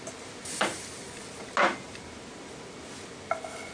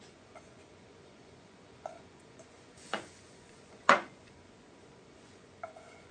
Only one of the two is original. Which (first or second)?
first